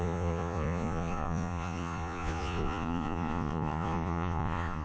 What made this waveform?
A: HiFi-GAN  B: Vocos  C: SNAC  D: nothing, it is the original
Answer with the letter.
B